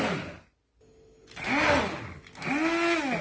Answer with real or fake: real